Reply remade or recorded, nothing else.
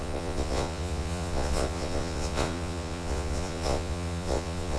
remade